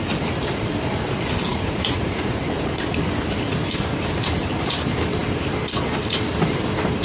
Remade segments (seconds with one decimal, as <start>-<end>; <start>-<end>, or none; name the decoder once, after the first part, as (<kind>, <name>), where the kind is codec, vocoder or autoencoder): 1.5-2.4 (vocoder, Vocos)